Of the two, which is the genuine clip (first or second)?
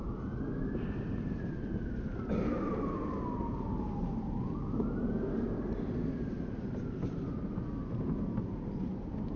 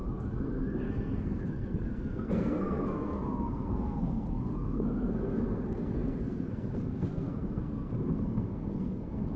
first